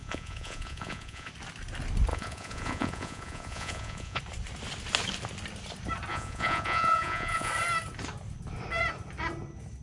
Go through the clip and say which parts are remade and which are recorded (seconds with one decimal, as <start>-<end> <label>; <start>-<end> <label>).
0.0-1.3 remade; 1.3-2.1 recorded; 2.1-4.2 remade; 4.2-6.1 recorded; 6.1-7.5 remade; 7.5-9.8 recorded